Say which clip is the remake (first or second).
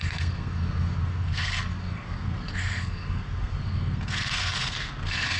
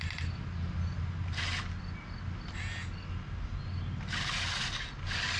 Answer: first